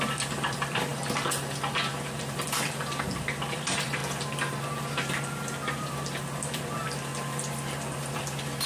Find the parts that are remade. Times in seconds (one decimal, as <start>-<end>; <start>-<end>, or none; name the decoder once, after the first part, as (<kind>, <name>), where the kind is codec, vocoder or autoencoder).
0.0-0.9 (vocoder, BigVGAN v2); 1.9-4.0; 4.7-7.1; 8.1-8.7

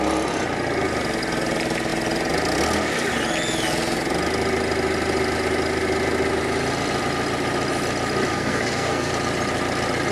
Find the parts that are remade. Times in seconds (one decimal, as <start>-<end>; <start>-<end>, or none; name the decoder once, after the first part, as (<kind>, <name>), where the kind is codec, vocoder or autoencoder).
8.3-9.1 (codec, SNAC)

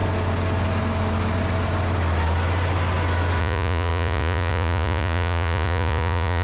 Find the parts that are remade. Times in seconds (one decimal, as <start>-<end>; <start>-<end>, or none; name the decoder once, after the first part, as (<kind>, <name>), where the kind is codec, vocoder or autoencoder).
3.4-6.4 (vocoder, Vocos)

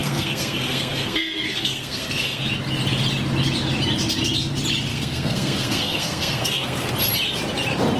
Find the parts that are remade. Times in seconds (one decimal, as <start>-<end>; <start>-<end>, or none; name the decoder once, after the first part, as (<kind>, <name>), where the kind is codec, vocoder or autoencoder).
0.0-2.4 (codec, SNAC); 4.9-6.9